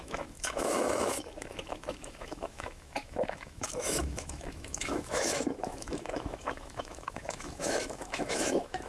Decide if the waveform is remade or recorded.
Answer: remade